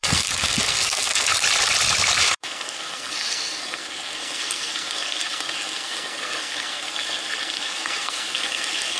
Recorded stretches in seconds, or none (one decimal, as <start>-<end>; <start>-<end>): 1.3-2.2